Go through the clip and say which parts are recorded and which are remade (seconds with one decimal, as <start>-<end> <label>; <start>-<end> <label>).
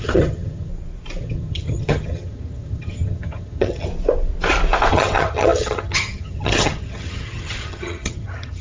0.0-0.7 remade; 0.7-1.2 recorded; 1.2-3.9 remade; 3.9-4.9 recorded; 4.9-8.6 remade